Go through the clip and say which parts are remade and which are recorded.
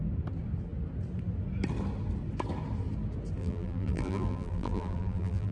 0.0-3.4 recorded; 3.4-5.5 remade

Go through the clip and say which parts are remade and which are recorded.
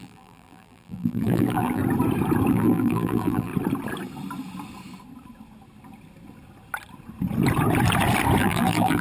0.0-1.8 remade; 1.8-2.5 recorded; 2.5-3.5 remade; 3.5-8.4 recorded; 8.4-9.0 remade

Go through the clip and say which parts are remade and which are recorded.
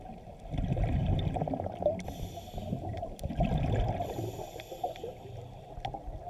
0.0-1.0 recorded; 1.0-4.8 remade; 4.8-6.3 recorded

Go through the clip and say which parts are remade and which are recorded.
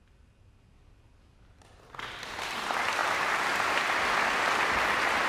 0.0-3.0 recorded; 3.0-4.1 remade; 4.1-5.3 recorded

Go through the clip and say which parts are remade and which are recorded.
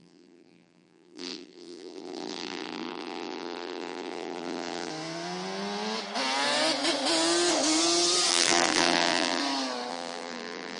0.0-4.9 remade; 4.9-8.3 recorded; 8.3-9.4 remade; 9.4-9.9 recorded; 9.9-10.8 remade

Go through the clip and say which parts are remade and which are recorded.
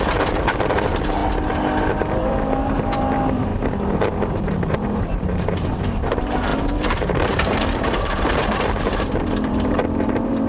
0.0-1.2 remade; 1.2-2.0 recorded; 2.0-3.5 remade; 3.5-4.4 recorded; 4.4-10.5 remade